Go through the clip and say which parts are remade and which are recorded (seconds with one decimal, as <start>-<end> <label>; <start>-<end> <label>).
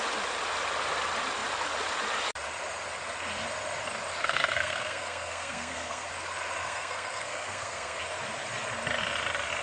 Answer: 0.0-4.2 recorded; 4.2-6.1 remade; 6.1-6.6 recorded; 6.6-8.0 remade; 8.0-9.6 recorded